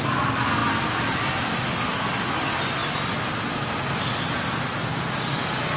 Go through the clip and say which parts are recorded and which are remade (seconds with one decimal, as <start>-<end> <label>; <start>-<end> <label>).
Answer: 0.0-5.8 recorded